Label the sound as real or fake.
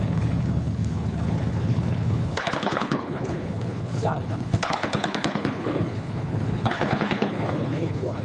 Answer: fake